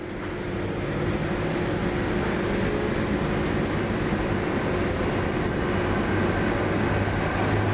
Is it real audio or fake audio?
real